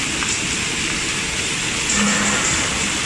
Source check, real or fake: real